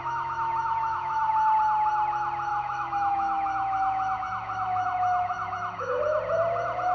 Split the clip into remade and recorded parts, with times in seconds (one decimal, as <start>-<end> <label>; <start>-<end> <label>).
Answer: 0.0-1.3 remade; 1.3-2.5 recorded; 2.5-6.0 remade; 6.0-6.9 recorded